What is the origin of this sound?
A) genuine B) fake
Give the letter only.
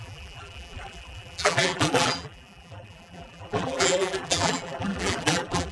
B